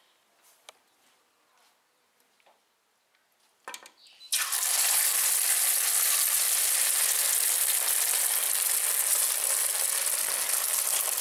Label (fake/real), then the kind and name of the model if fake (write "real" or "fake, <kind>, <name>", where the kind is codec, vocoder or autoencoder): real